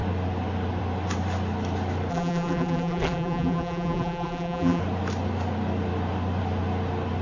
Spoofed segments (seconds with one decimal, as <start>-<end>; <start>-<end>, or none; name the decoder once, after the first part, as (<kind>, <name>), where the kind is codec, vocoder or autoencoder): 2.1-4.8 (vocoder, BigVGAN v2)